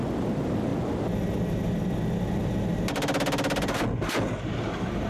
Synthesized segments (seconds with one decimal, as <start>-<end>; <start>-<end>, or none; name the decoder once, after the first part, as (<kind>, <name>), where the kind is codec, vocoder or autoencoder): none